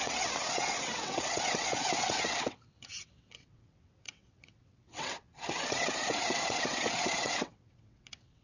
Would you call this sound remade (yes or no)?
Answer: yes